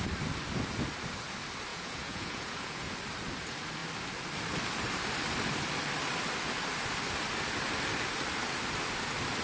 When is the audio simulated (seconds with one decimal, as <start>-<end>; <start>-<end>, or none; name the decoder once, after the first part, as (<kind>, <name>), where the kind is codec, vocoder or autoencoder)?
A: 1.7-2.9 (vocoder, Vocos)

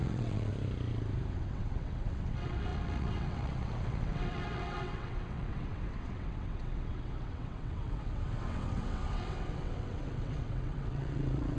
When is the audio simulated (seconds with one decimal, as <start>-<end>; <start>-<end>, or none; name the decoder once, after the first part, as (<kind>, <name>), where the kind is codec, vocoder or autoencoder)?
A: 0.0-0.5 (vocoder, WaveNeXt); 1.3-11.6

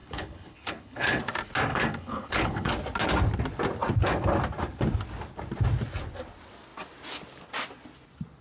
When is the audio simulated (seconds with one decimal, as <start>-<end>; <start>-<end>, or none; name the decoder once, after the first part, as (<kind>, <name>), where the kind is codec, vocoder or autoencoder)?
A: 0.0-1.2 (codec, HILCodec); 1.7-2.7